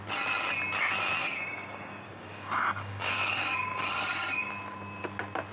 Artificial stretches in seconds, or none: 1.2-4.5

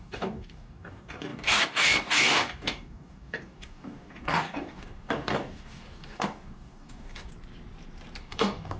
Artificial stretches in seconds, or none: 0.0-7.3; 8.2-8.8

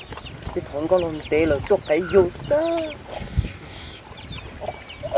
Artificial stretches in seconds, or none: 3.1-4.0

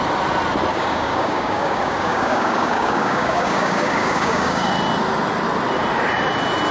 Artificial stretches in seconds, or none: 0.7-4.7

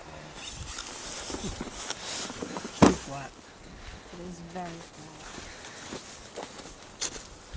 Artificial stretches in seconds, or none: none

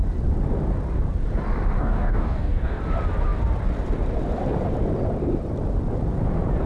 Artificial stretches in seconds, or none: 1.8-2.8